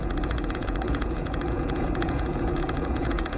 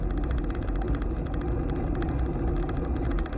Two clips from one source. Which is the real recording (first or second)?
second